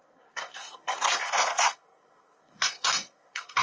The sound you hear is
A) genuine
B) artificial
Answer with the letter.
B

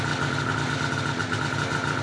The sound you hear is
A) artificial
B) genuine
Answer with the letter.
B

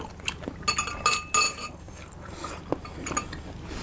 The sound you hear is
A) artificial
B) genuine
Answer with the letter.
B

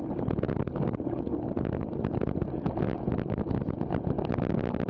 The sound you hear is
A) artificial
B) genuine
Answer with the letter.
B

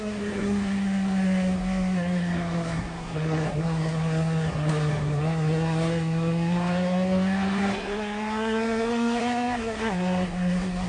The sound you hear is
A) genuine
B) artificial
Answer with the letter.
B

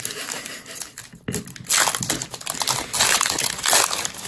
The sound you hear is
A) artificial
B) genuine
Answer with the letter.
B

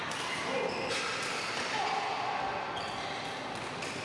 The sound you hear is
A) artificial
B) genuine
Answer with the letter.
B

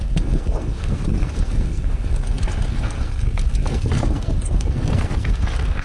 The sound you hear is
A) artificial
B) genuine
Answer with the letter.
A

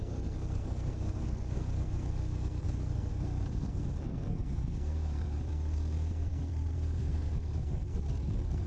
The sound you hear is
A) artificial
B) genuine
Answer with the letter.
A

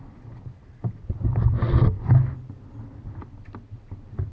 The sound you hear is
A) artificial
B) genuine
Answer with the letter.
B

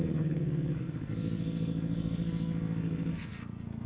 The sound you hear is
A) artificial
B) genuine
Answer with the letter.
A